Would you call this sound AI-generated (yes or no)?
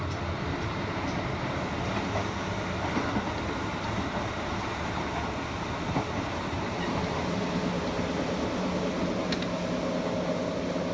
no